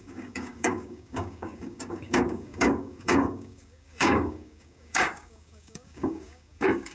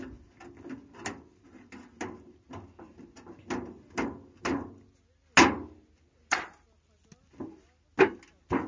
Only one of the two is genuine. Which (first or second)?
second